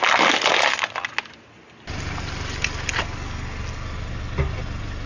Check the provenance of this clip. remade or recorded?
recorded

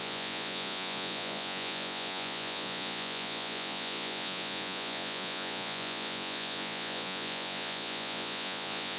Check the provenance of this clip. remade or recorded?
remade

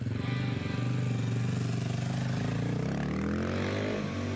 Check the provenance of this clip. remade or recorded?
recorded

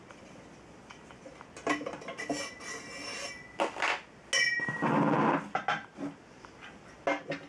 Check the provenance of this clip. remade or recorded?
recorded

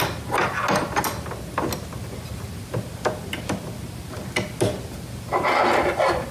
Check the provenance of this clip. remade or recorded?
recorded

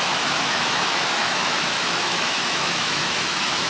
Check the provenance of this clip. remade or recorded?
remade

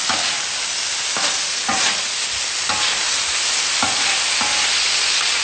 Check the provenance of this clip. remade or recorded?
recorded